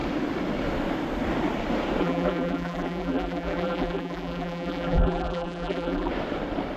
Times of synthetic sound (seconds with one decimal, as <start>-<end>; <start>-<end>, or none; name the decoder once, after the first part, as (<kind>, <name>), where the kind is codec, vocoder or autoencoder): 2.0-6.1 (vocoder, BigVGAN v2)